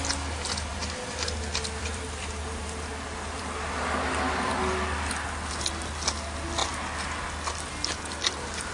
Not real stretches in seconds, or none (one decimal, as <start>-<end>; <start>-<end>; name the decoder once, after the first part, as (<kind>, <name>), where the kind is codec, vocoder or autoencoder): 0.7-3.4 (vocoder, BigVGAN v2)